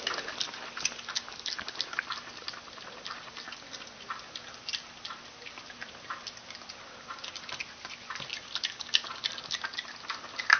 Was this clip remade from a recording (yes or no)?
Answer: no